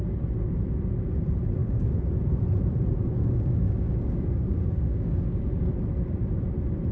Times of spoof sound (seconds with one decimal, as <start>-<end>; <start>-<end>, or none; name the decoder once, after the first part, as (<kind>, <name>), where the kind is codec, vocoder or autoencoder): 1.6-2.1 (codec, DAC); 3.2-5.7